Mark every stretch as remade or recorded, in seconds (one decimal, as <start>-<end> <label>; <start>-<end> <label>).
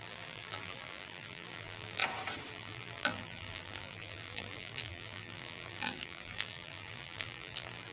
0.0-2.0 remade; 2.0-2.5 recorded; 2.5-7.9 remade